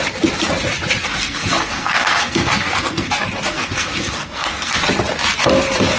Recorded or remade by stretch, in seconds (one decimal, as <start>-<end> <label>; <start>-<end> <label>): 0.0-1.0 recorded; 1.0-3.1 remade; 3.1-3.5 recorded; 3.5-4.8 remade; 4.8-6.0 recorded